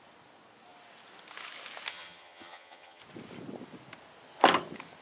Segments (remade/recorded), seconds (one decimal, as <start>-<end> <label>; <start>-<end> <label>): 0.0-1.9 recorded; 1.9-3.0 remade; 3.0-5.0 recorded